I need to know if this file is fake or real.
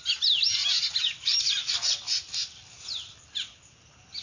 real